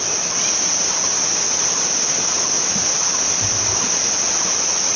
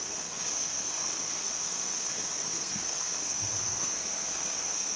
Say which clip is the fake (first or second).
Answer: second